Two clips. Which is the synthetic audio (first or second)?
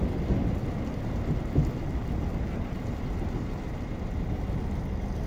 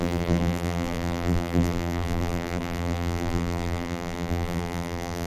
second